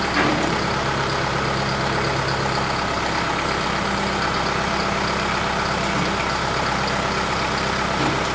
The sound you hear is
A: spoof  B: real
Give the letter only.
B